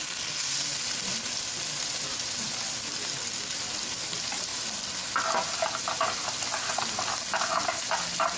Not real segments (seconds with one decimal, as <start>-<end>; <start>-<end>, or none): none